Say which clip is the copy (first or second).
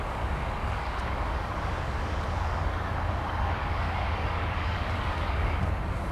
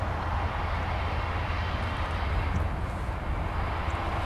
first